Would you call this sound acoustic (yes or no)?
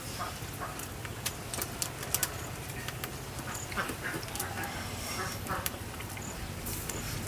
no